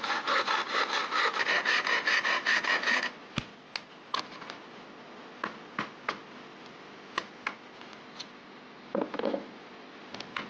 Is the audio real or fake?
real